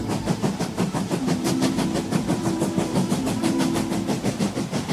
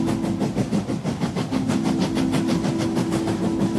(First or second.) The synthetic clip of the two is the first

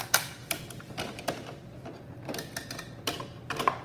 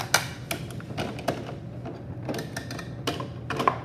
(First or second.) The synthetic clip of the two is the first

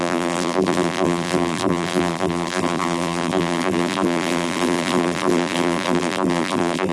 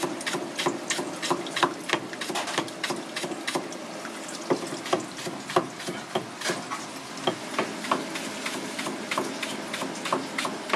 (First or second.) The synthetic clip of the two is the first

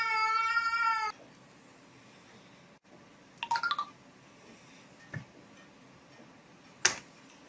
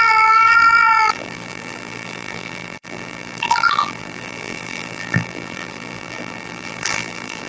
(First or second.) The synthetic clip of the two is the second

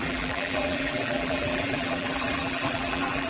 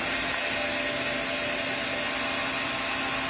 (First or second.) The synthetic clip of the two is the first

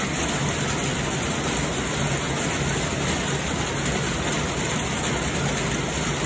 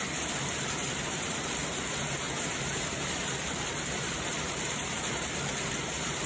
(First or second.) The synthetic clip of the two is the second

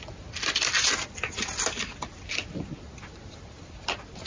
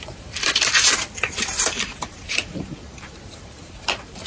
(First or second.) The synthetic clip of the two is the second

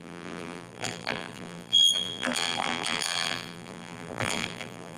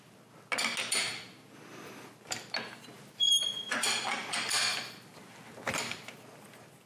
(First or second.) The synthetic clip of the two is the first